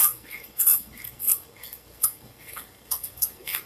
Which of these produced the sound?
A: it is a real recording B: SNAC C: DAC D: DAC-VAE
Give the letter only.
B